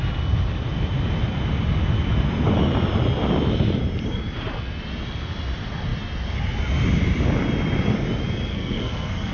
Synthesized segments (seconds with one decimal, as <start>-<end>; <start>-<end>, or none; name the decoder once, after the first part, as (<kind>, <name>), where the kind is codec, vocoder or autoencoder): 8.5-9.3 (codec, SNAC)